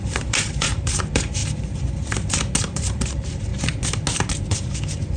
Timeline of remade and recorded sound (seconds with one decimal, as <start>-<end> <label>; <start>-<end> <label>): 0.0-1.4 remade; 1.4-2.6 recorded; 2.6-3.5 remade; 3.5-4.4 recorded; 4.4-5.2 remade